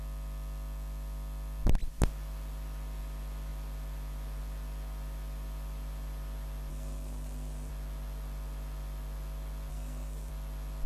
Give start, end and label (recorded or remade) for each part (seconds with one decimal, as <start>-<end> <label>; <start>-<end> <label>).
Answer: 0.0-6.7 recorded; 6.7-7.7 remade; 7.7-9.7 recorded; 9.7-10.3 remade; 10.3-10.9 recorded